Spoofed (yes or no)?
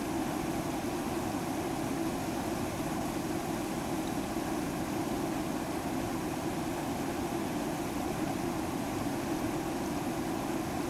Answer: no